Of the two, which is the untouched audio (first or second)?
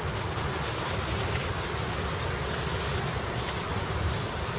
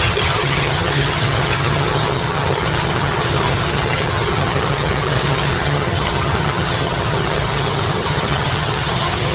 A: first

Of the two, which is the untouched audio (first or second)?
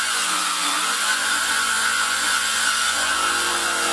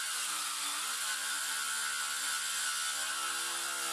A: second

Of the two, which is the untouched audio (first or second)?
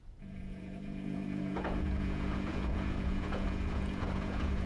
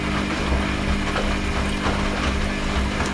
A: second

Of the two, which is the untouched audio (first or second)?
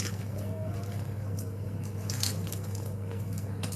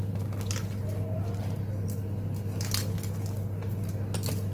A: second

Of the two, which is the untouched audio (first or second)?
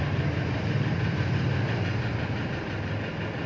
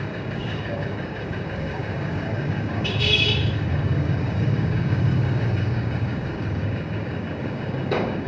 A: first